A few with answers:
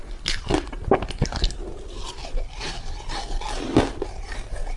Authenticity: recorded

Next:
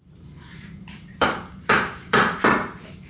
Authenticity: remade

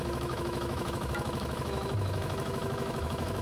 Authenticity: remade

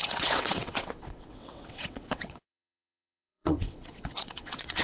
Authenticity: remade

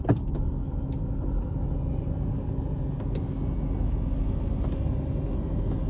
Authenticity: recorded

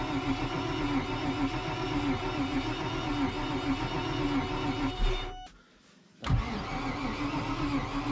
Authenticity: recorded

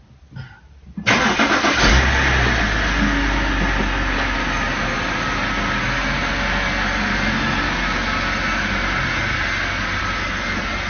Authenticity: recorded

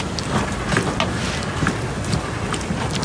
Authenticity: recorded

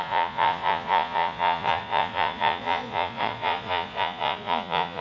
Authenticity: remade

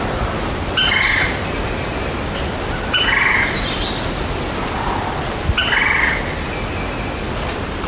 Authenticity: recorded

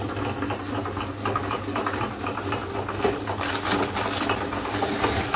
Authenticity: recorded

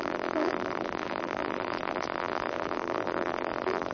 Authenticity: remade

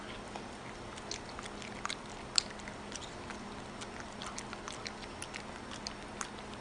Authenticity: recorded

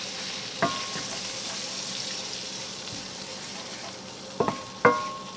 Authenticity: recorded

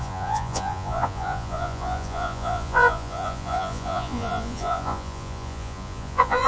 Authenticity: remade